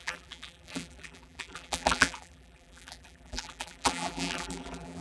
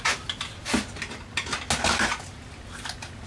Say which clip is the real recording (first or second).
second